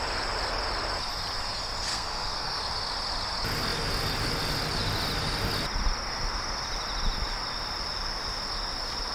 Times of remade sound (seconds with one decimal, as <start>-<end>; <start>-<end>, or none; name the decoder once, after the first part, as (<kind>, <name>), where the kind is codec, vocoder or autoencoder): 1.9-2.6 (codec, SNAC)